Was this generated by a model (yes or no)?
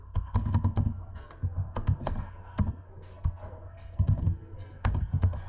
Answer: yes